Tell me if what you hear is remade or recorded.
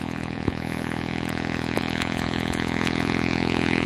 remade